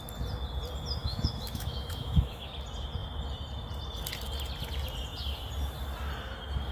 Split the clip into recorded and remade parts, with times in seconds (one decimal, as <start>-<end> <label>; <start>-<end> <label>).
0.0-1.0 recorded; 1.0-2.5 remade; 2.5-6.7 recorded